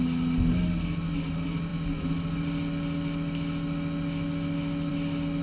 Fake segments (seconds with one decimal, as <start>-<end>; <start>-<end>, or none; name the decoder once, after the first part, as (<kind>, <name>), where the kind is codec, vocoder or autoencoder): none